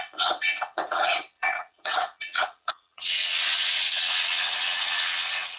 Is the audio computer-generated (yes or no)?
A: yes